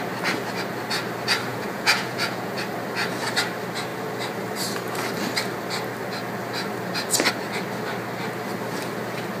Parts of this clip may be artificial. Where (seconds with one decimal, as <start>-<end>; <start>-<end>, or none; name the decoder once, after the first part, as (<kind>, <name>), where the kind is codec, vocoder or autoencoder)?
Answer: 1.5-2.6 (vocoder, Vocos)